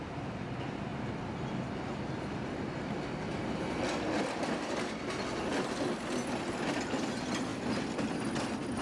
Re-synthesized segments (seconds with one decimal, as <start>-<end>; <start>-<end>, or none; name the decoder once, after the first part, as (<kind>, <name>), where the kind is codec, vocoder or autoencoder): none